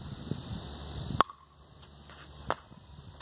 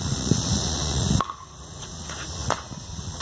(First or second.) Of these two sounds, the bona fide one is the first